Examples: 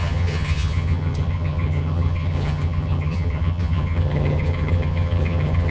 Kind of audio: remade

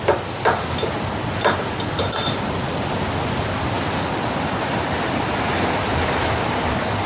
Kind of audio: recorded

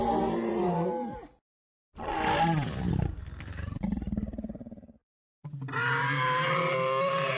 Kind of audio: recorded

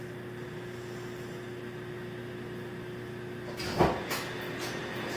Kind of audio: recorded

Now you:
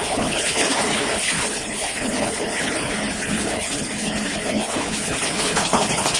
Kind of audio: remade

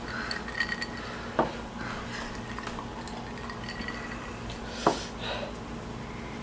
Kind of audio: recorded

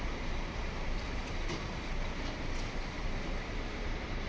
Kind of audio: remade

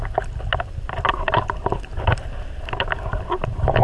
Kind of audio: recorded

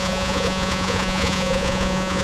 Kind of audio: remade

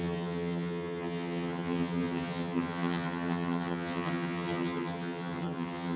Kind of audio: remade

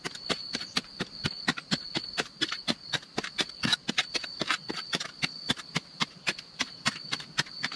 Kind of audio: remade